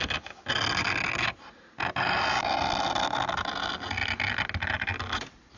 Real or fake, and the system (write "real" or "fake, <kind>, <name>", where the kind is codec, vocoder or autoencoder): real